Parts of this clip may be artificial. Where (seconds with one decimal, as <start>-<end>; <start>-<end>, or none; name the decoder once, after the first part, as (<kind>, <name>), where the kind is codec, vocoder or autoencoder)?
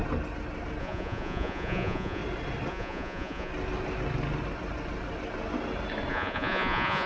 0.8-2.2 (vocoder, Vocos); 2.7-3.5; 6.1-7.1